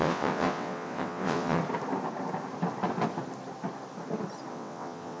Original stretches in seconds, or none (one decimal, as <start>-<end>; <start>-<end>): 1.6-4.5